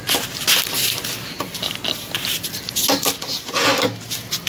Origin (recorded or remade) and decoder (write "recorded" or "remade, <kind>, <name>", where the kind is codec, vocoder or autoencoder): recorded